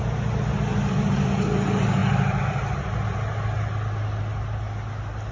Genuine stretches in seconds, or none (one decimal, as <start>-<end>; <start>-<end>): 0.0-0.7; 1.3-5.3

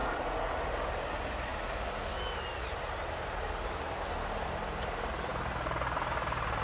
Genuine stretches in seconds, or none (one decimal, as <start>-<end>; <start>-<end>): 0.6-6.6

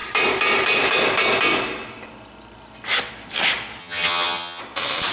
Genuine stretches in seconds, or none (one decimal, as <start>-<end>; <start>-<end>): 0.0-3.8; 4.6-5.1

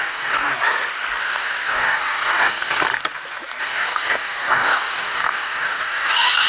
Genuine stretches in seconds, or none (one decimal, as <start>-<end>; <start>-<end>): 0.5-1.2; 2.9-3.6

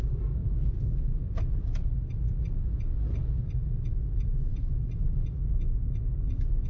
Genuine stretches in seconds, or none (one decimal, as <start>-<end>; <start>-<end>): 0.0-6.7

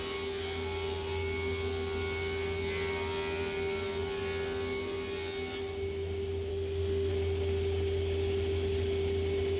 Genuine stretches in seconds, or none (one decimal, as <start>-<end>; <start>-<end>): 0.0-6.5; 7.1-9.6

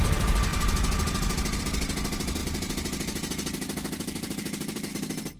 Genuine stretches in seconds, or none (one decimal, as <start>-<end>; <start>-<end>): 0.0-2.4; 4.9-5.4